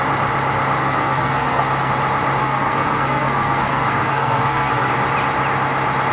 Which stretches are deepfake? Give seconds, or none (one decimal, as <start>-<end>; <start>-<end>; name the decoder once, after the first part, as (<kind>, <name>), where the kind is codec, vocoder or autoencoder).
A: 0.8-1.9 (codec, SNAC); 2.4-4.9